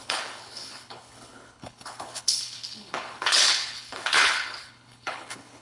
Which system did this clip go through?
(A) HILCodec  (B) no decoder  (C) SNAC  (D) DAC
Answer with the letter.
A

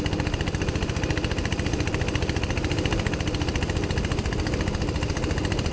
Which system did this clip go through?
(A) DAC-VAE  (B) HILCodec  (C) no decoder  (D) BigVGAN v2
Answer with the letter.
C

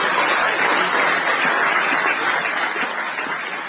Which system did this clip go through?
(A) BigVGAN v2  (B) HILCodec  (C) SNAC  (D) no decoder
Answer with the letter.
D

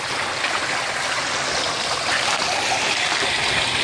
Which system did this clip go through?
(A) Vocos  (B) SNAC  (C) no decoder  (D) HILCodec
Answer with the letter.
C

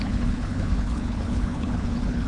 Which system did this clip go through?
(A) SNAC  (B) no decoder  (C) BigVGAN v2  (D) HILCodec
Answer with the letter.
D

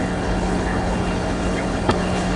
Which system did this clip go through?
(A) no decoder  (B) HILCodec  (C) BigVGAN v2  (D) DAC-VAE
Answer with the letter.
B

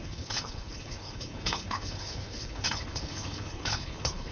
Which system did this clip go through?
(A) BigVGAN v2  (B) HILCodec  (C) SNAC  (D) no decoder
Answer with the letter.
B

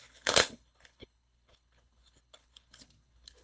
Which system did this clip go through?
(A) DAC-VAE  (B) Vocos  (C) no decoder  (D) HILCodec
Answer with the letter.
D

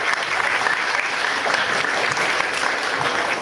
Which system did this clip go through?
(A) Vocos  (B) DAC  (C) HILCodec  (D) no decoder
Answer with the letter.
D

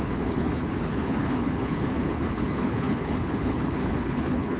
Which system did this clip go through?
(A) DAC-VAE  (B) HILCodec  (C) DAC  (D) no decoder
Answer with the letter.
B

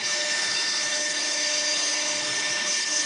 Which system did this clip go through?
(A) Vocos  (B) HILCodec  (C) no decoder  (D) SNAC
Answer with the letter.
B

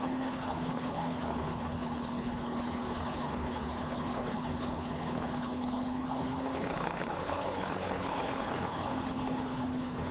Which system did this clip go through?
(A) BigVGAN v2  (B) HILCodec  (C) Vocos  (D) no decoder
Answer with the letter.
B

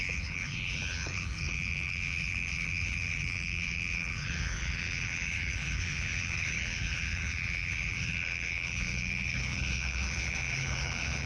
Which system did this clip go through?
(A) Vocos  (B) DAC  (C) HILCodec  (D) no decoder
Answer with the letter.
C